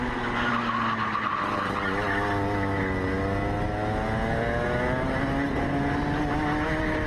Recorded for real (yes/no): yes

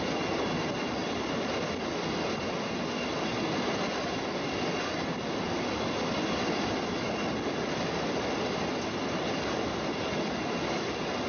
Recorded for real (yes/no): yes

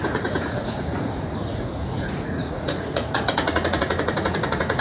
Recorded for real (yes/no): no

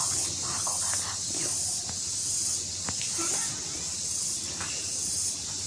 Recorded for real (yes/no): yes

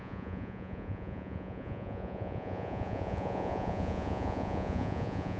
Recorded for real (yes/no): no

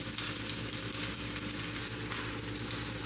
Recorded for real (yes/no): yes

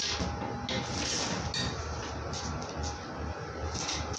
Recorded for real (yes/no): yes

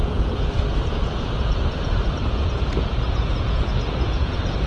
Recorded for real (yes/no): no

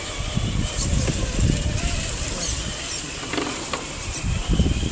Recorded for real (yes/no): yes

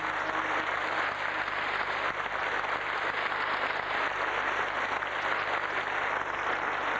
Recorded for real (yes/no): yes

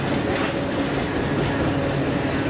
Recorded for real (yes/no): yes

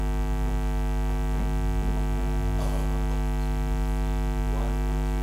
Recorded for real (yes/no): yes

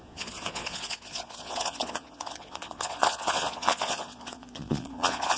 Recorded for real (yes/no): no